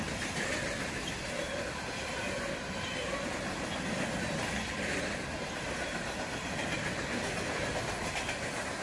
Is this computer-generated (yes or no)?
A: no